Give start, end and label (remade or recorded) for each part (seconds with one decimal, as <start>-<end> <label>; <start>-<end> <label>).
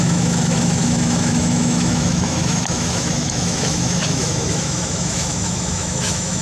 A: 0.0-6.4 remade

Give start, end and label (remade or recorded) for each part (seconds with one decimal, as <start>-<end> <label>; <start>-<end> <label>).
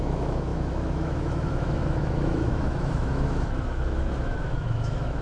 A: 0.0-5.2 remade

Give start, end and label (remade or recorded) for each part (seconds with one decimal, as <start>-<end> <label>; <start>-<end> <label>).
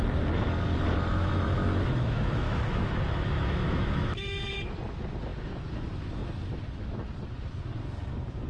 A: 0.0-1.1 recorded; 1.1-4.5 remade; 4.5-8.5 recorded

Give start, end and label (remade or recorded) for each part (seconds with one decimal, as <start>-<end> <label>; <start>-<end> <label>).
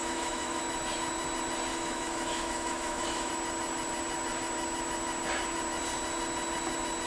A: 0.0-0.6 remade; 0.6-1.7 recorded; 1.7-3.3 remade; 3.3-7.1 recorded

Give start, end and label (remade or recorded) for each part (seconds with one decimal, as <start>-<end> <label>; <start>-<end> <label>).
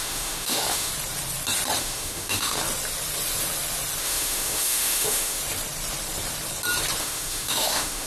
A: 0.0-0.9 remade; 0.9-1.8 recorded; 1.8-2.6 remade; 2.6-4.0 recorded; 4.0-5.4 remade; 5.4-7.0 recorded; 7.0-8.1 remade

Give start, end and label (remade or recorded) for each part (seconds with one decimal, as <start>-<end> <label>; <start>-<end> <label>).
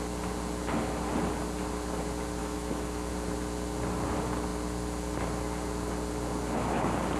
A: 0.0-2.4 recorded; 2.4-3.1 remade; 3.1-7.2 recorded